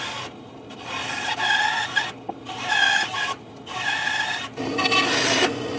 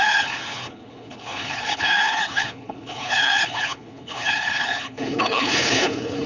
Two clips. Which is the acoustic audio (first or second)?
first